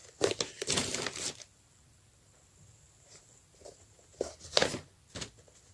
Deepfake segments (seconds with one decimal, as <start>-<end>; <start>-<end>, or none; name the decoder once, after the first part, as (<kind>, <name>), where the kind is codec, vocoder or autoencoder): none